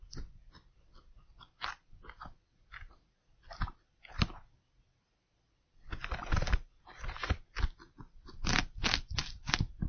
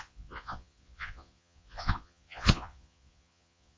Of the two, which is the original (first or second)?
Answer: first